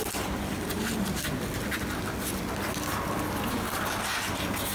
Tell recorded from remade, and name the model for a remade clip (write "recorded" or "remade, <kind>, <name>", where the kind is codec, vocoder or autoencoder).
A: remade, vocoder, BigVGAN v2